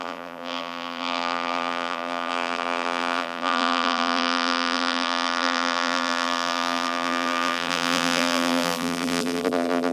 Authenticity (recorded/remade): remade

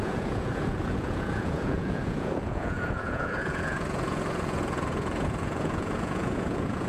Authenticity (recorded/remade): remade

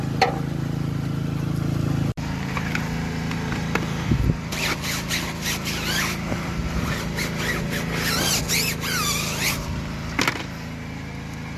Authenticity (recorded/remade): recorded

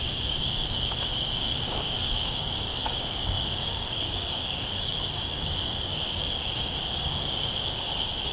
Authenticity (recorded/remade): remade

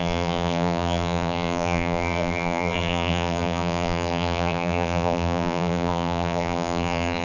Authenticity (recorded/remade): remade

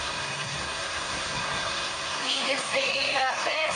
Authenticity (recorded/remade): remade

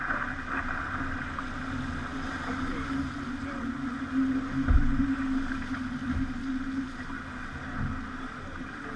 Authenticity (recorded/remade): recorded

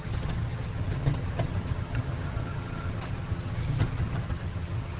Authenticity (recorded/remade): remade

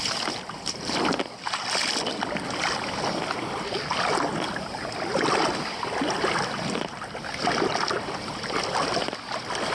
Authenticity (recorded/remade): recorded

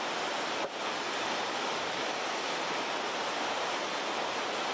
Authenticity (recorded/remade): recorded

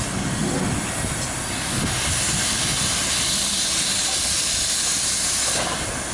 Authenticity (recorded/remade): recorded